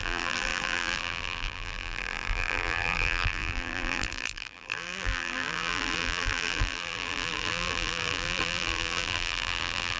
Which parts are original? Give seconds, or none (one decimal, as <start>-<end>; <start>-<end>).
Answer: none